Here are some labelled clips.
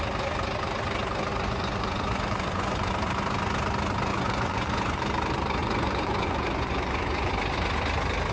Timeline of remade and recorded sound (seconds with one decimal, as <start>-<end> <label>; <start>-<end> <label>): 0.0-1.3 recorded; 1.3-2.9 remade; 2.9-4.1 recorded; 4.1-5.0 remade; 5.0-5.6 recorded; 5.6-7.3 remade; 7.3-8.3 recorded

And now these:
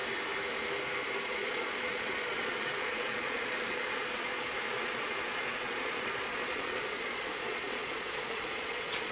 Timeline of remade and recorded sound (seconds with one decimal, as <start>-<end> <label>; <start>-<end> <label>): 0.0-1.2 recorded; 1.2-9.1 remade

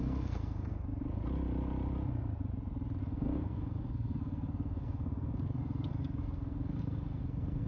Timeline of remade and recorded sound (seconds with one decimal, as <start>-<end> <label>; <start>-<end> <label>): 0.0-0.9 remade; 0.9-3.0 recorded; 3.0-7.7 remade

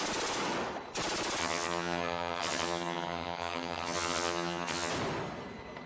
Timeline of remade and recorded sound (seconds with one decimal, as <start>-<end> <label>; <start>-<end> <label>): 0.0-1.4 recorded; 1.4-4.9 remade; 4.9-5.9 recorded

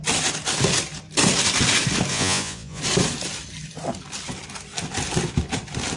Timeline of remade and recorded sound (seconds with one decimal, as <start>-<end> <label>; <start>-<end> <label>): 0.0-2.1 recorded; 2.1-2.8 remade; 2.8-6.0 recorded